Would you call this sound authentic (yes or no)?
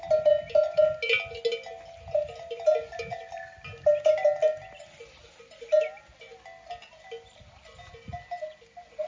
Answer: yes